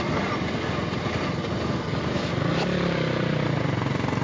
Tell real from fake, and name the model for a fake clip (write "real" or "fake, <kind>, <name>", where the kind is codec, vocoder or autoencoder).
real